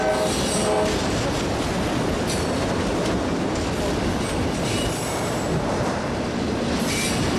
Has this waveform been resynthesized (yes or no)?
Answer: no